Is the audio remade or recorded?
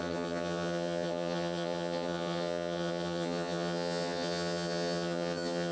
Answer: remade